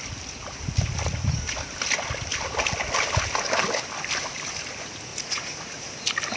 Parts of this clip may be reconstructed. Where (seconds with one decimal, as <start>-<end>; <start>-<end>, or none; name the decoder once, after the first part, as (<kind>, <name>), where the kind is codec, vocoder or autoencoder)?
5.1-5.9 (vocoder, Vocos)